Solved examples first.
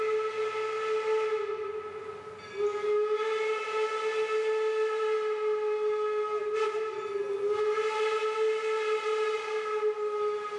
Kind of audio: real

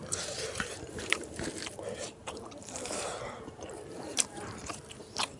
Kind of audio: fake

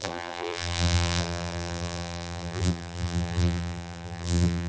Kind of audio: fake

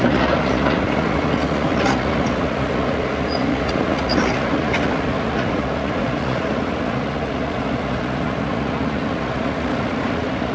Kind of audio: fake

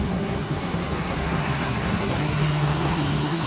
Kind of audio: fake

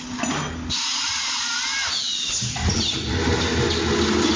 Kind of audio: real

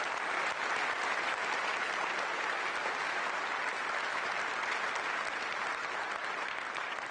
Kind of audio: real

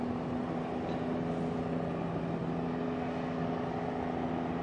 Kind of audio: real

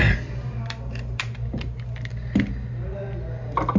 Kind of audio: real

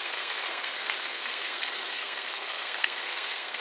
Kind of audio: fake